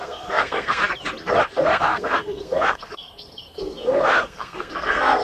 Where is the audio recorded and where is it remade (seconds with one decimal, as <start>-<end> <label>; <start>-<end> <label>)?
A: 0.0-0.8 remade; 0.8-1.4 recorded; 1.4-5.2 remade